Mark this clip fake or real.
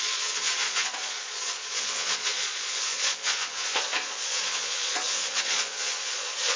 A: fake